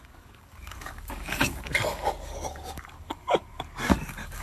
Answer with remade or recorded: remade